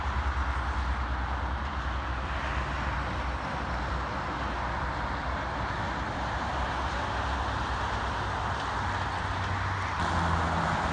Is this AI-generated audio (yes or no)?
no